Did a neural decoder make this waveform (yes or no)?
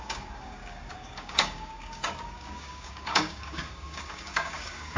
yes